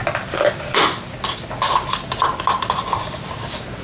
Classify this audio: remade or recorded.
recorded